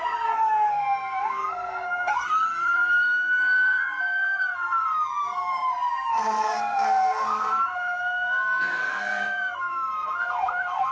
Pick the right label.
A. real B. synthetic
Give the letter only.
B